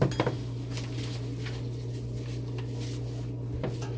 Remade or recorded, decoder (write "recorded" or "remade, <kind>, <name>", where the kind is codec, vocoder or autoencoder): recorded